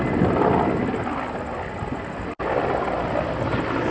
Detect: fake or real real